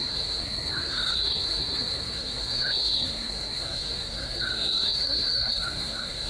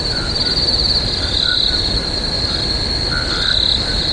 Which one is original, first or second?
second